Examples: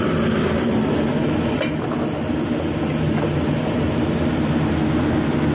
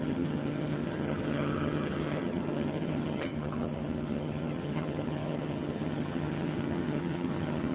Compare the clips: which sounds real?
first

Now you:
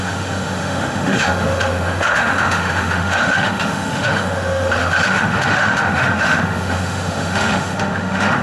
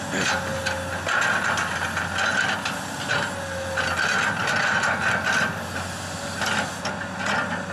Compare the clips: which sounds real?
second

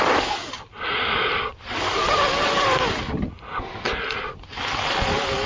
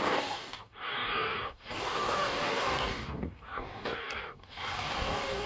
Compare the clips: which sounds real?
first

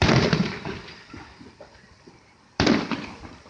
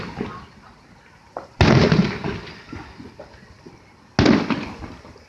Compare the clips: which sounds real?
second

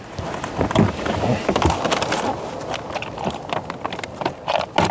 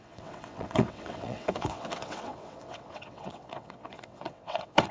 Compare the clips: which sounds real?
first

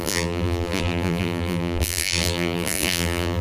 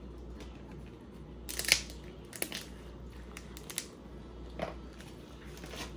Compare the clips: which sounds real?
second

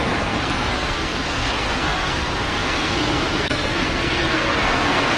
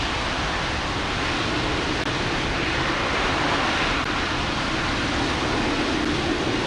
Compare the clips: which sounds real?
second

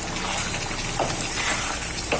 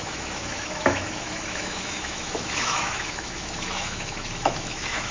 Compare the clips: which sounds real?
first